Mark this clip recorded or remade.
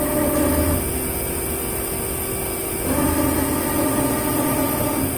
recorded